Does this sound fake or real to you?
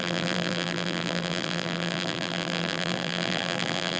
fake